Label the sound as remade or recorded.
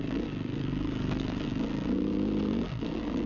remade